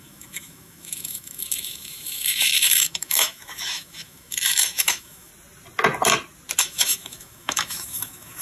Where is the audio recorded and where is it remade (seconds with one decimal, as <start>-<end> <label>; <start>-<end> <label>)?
0.0-5.3 remade; 5.3-6.6 recorded; 6.6-8.4 remade